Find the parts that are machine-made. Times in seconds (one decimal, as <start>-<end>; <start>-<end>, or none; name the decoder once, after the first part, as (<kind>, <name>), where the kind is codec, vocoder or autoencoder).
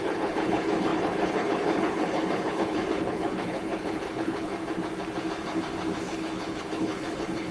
0.0-4.5 (codec, HILCodec); 6.0-7.5